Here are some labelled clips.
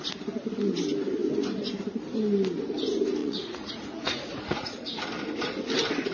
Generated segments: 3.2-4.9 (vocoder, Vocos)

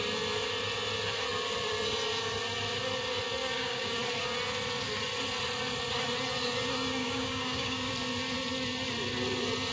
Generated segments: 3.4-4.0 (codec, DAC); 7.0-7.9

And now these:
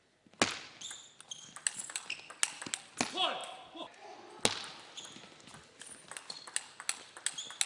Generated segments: none

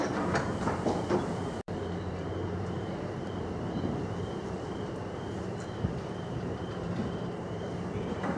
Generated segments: 0.0-4.4 (vocoder, BigVGAN v2); 5.8-8.4